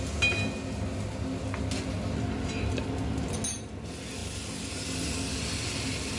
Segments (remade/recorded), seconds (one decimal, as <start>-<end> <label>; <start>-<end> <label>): 0.0-6.2 recorded